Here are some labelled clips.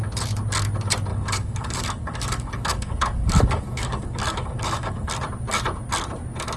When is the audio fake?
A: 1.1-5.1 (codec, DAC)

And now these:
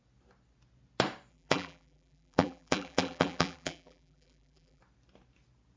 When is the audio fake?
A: 1.3-4.8 (vocoder, BigVGAN v2)

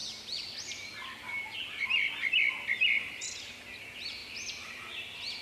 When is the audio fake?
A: none

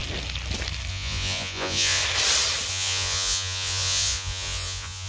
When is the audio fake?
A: 0.9-2.0 (vocoder, Vocos); 2.7-5.1